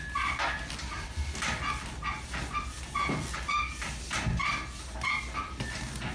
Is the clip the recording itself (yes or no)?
yes